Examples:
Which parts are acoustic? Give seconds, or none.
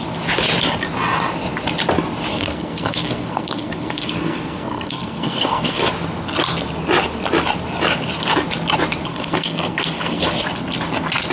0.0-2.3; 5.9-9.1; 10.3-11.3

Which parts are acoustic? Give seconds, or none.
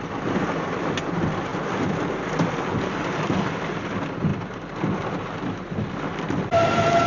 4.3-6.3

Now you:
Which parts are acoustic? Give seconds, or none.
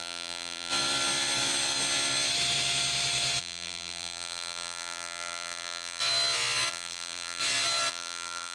0.7-3.4; 6.0-6.7; 7.4-7.9